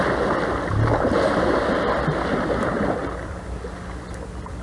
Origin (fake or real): real